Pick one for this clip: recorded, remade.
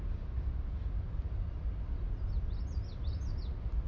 recorded